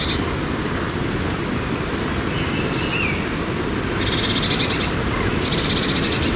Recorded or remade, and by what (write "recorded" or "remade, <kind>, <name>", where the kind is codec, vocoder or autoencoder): recorded